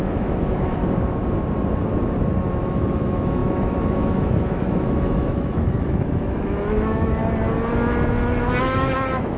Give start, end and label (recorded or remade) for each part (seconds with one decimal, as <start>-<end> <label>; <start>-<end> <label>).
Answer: 0.0-0.8 remade; 0.8-2.5 recorded; 2.5-7.2 remade; 7.2-8.6 recorded; 8.6-9.4 remade